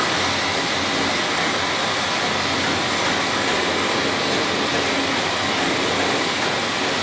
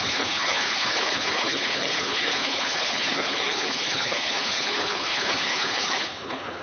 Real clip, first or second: first